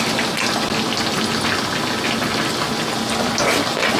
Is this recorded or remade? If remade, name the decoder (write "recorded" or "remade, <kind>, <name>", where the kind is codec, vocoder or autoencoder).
recorded